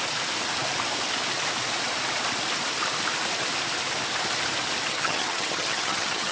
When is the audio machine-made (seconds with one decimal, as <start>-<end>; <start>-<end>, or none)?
4.9-6.3